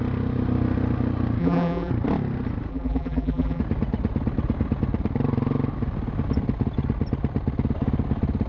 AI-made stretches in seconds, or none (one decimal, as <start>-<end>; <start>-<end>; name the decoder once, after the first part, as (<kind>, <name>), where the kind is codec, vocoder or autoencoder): 1.4-1.9 (vocoder, BigVGAN v2); 2.7-3.6